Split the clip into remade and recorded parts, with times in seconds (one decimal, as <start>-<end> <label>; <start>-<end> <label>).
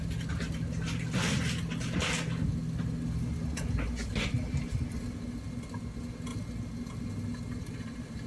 0.0-8.3 recorded